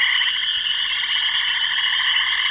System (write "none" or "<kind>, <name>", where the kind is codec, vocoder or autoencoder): none